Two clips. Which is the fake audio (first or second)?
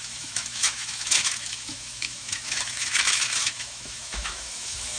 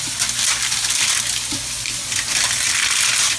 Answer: first